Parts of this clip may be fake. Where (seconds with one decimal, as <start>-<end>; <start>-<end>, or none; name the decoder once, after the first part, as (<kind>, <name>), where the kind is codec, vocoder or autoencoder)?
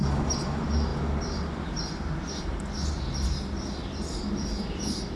none